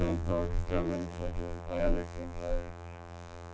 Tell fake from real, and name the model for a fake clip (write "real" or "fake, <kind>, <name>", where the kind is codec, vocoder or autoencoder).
fake, vocoder, BigVGAN v2